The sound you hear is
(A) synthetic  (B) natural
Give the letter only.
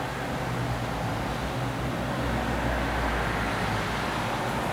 B